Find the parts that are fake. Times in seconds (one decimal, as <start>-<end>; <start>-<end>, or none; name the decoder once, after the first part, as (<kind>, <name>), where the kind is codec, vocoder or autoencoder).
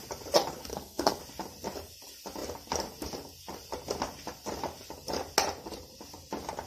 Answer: 0.7-1.2 (codec, SNAC)